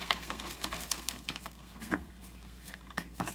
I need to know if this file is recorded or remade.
remade